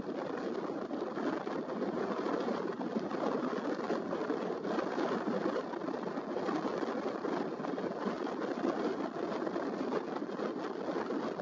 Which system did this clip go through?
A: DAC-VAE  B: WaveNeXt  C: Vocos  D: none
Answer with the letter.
D